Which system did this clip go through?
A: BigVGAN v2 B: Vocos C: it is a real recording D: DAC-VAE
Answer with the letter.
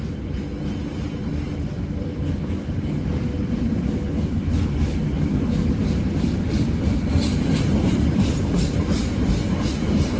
C